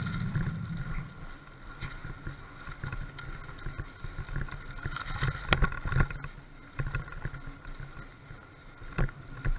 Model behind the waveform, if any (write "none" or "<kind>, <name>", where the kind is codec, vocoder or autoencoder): none